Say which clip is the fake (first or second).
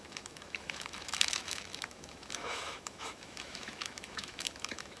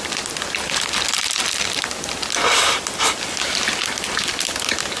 first